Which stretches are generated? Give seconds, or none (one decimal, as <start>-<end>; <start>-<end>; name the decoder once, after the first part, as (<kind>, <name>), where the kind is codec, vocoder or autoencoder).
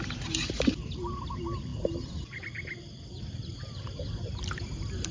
none